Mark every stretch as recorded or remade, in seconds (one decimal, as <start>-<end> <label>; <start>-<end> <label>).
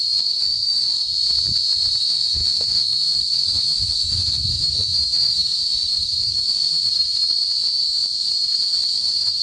0.0-1.1 remade; 1.1-2.0 recorded; 2.0-7.0 remade; 7.0-9.0 recorded; 9.0-9.4 remade